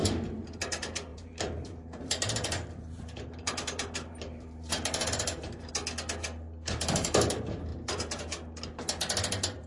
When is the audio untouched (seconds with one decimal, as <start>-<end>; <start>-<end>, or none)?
0.0-1.1; 5.7-7.7; 8.2-9.7